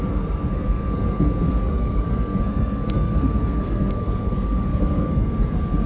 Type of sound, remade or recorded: remade